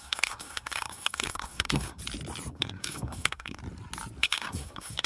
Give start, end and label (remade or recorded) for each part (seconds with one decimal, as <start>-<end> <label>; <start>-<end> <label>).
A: 0.0-2.0 remade; 2.0-2.5 recorded; 2.5-3.6 remade; 3.6-4.2 recorded; 4.2-5.1 remade